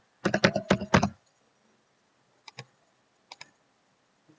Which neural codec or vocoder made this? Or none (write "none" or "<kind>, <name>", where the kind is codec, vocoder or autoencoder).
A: none